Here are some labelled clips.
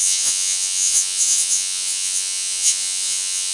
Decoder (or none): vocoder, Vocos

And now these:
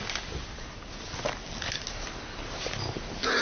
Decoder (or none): none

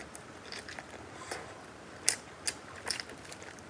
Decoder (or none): none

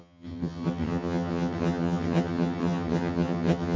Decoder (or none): vocoder, HiFi-GAN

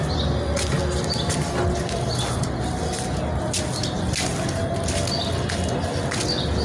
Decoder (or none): none